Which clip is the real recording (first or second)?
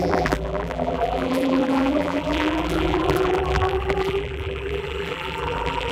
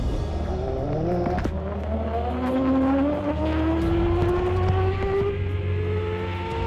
second